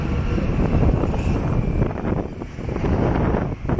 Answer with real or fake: real